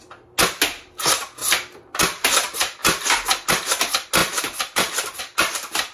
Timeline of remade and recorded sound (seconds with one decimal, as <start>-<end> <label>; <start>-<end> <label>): 0.0-2.8 recorded; 2.8-3.3 remade; 3.3-4.2 recorded; 4.2-5.2 remade; 5.2-5.9 recorded